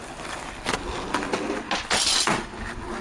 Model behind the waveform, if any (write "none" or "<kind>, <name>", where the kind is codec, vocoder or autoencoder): none